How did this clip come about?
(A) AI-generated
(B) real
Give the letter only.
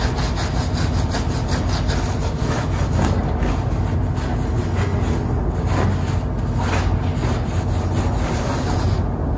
B